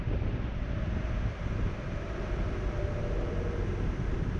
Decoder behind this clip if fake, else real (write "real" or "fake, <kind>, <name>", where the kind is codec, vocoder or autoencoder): real